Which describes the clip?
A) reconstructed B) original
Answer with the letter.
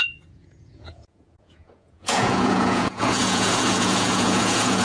A